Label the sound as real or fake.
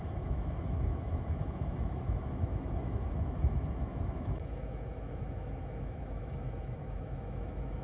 fake